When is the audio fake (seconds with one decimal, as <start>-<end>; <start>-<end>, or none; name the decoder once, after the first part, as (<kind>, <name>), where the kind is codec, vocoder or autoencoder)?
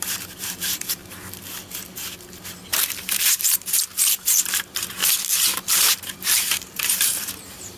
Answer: 0.0-1.0 (vocoder, BigVGAN v2); 2.7-5.0; 5.7-7.8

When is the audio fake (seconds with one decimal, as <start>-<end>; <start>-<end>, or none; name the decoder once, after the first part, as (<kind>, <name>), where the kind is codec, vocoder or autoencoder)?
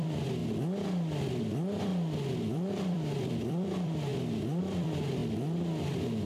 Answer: 0.0-0.4 (vocoder, BigVGAN v2); 1.4-1.9; 2.4-4.1; 4.6-5.2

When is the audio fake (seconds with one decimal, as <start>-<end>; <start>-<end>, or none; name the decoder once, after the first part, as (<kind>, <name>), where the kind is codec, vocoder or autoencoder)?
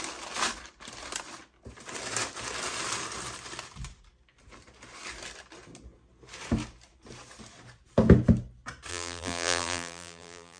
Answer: 8.9-10.6 (vocoder, BigVGAN v2)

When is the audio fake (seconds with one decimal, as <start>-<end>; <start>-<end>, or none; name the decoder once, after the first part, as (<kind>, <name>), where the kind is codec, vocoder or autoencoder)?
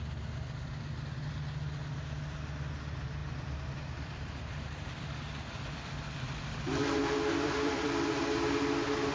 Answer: 3.2-7.9 (vocoder, BigVGAN v2)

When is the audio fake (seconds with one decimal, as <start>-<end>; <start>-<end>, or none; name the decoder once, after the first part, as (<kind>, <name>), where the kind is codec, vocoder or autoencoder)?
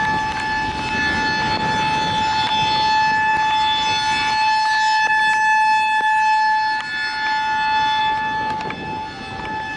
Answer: none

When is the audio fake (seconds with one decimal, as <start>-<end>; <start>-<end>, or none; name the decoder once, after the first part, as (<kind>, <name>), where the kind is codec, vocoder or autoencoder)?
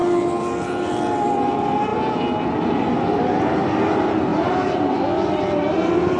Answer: 4.3-4.9 (vocoder, BigVGAN v2)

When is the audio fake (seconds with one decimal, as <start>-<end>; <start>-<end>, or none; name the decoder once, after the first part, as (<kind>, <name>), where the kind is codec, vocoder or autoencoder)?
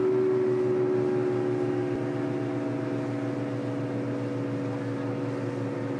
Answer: none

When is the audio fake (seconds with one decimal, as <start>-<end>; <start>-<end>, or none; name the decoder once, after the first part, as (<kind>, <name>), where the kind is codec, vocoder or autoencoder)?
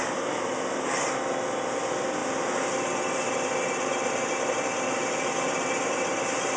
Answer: none